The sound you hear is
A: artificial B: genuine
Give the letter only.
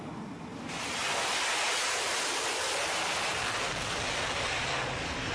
B